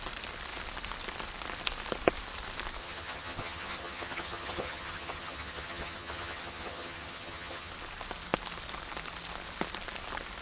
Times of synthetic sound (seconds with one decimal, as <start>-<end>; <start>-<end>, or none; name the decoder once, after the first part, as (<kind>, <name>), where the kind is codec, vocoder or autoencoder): 2.8-7.7 (vocoder, HiFi-GAN)